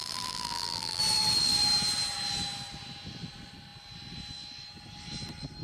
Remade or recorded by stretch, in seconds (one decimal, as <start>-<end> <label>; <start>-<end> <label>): 0.0-1.0 remade; 1.0-5.6 recorded